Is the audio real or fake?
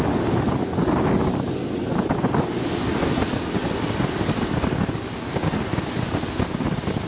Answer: real